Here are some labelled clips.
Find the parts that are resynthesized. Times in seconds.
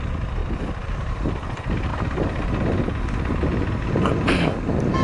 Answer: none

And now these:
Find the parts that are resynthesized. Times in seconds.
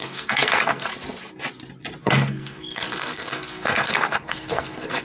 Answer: 0.0-0.9 (codec, SNAC); 2.0-5.0